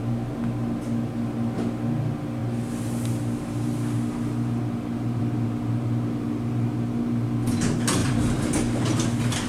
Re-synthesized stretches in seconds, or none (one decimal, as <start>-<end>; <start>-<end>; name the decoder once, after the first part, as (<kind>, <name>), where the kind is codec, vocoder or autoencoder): 8.0-9.5 (vocoder, BigVGAN v2)